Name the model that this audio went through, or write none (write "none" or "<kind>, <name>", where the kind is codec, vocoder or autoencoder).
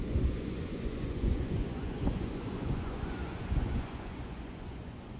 vocoder, Vocos